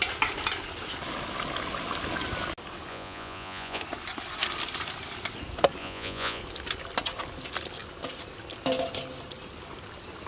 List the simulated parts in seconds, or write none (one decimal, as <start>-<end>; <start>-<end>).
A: 2.9-3.8; 5.8-6.4